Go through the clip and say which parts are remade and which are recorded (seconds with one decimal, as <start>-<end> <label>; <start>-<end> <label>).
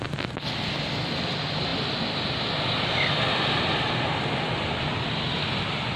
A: 0.0-6.0 recorded